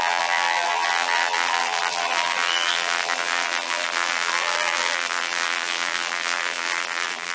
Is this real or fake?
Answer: fake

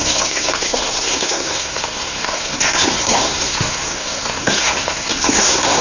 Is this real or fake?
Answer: fake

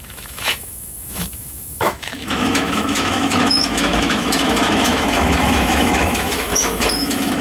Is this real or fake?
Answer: fake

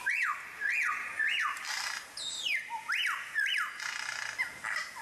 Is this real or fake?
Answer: real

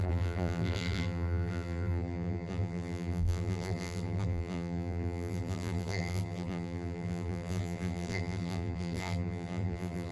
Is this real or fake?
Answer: fake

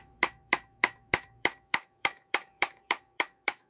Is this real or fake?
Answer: fake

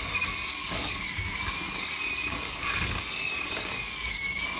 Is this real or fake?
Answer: fake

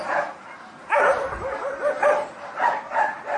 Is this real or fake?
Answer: real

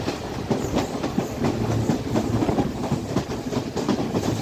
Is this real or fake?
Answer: real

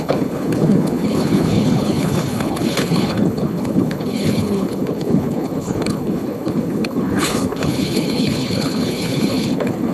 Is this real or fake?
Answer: fake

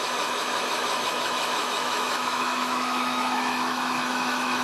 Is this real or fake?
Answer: fake